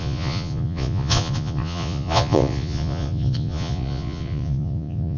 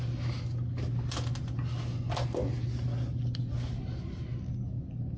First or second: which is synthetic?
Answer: first